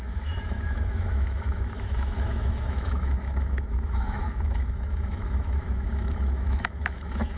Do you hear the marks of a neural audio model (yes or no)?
yes